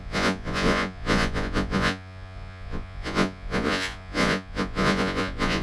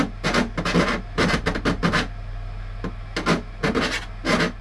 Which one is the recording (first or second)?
second